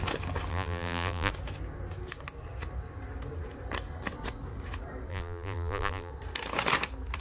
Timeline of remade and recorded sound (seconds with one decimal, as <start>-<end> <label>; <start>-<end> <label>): 0.0-0.5 recorded; 0.5-1.3 remade; 1.3-5.1 recorded; 5.1-6.1 remade; 6.1-7.2 recorded